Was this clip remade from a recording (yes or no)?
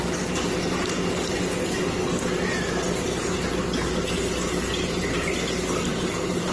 no